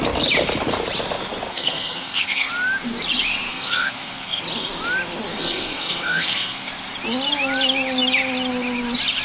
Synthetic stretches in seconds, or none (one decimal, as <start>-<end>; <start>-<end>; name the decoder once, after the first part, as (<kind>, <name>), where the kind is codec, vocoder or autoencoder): 1.5-2.5 (codec, SNAC); 3.5-4.4; 5.3-6.7